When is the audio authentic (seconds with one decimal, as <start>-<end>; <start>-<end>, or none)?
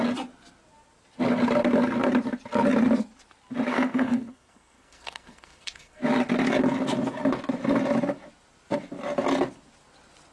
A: 0.0-3.7; 6.0-10.3